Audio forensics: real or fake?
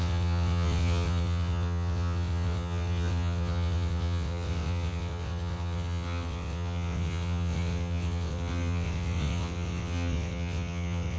fake